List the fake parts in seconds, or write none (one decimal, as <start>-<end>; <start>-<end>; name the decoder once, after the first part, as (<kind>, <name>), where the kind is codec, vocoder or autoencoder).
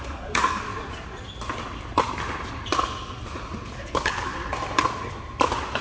0.0-0.7 (codec, DAC); 3.7-4.3